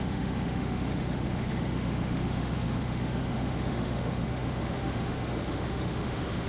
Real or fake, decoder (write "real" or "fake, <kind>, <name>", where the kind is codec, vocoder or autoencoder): fake, autoencoder, DAC-VAE